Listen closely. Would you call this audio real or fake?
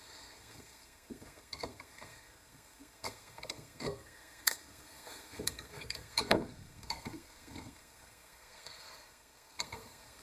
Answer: fake